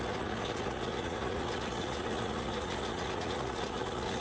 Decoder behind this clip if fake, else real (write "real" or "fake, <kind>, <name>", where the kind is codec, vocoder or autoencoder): fake, vocoder, Vocos